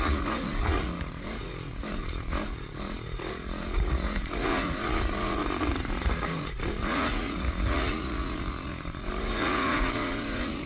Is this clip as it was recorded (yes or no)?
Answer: no